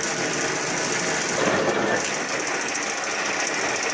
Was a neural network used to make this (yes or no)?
no